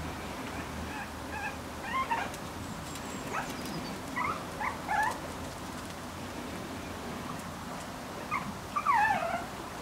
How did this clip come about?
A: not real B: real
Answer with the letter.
B